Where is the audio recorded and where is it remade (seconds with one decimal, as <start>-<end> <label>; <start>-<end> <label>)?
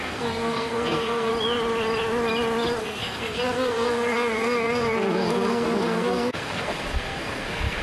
0.0-1.3 remade; 1.3-2.8 recorded; 2.8-7.8 remade